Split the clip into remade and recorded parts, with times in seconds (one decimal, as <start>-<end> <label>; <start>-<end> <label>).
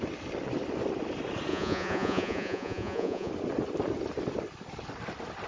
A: 0.0-1.5 recorded; 1.5-3.3 remade; 3.3-5.5 recorded